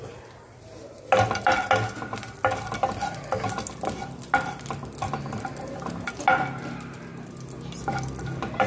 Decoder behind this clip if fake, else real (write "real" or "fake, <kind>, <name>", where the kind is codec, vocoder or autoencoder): real